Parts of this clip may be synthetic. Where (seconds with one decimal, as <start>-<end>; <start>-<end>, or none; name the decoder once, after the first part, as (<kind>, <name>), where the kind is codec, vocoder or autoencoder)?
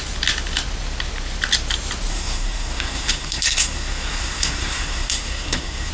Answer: 2.1-5.9 (codec, SNAC)